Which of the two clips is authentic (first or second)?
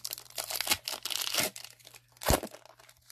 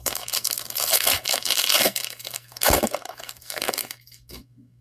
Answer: first